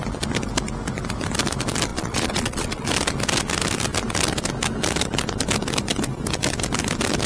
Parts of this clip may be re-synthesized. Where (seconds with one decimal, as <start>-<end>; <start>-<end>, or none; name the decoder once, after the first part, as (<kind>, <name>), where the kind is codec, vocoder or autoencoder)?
1.9-2.9 (vocoder, Vocos)

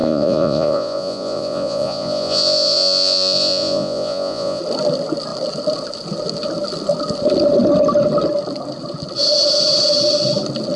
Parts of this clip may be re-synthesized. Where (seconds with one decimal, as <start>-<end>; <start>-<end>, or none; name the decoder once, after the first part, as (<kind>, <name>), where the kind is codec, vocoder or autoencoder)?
0.0-4.6 (vocoder, Vocos)

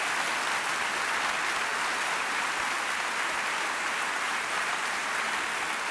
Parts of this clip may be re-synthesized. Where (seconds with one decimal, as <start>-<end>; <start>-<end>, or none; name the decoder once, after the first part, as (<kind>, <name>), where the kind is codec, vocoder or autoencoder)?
1.7-5.1 (vocoder, BigVGAN v2)

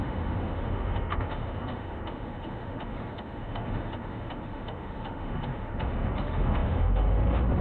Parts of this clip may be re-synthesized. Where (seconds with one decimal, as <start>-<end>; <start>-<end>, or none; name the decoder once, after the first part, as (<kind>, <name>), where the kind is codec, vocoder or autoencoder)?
0.0-7.6 (autoencoder, DAC-VAE)

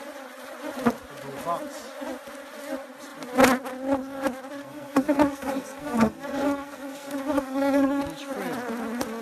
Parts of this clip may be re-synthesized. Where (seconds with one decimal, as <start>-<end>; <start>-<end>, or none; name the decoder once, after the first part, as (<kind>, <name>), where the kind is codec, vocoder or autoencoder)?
4.6-8.0 (codec, SNAC)

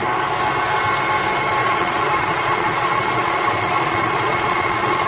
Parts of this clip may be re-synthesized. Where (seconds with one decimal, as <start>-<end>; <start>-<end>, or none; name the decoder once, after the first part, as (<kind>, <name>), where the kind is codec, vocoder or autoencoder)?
1.6-5.1 (vocoder, Vocos)

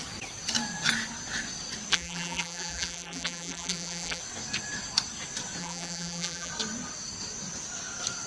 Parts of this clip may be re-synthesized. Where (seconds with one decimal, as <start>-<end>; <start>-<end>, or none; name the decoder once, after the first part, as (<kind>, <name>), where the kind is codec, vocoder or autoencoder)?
1.9-4.2 (vocoder, BigVGAN v2); 5.6-6.5